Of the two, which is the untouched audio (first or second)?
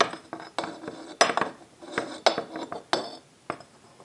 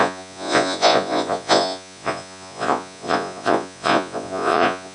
first